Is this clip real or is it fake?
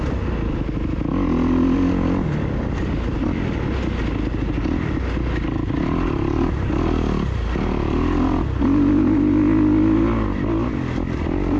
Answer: real